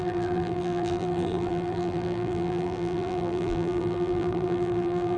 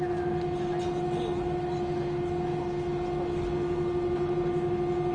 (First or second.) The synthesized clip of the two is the first